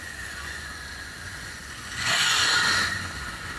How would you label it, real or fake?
fake